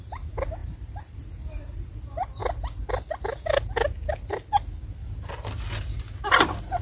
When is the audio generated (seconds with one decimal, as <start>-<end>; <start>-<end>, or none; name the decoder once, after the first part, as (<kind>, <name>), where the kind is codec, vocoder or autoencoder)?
0.0-2.4 (vocoder, BigVGAN v2)